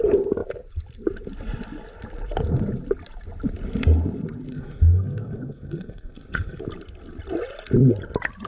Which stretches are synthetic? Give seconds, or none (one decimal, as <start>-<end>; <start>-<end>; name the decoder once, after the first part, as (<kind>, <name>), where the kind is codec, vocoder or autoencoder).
4.5-6.6 (codec, SNAC)